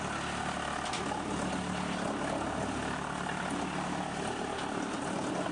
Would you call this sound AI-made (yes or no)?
no